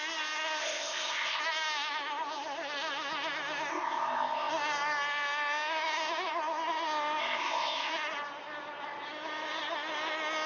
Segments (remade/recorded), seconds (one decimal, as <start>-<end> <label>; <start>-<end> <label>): 0.0-0.6 recorded; 0.6-1.4 remade; 1.4-3.7 recorded; 3.7-4.5 remade; 4.5-7.2 recorded; 7.2-7.9 remade; 7.9-10.5 recorded